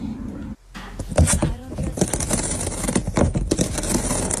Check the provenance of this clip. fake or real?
real